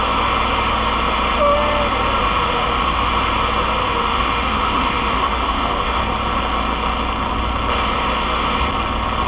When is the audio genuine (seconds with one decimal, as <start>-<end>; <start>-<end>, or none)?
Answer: 0.0-2.2; 3.1-3.8; 6.0-9.3